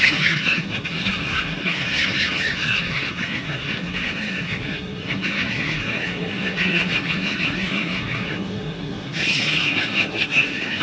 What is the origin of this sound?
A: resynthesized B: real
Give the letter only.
A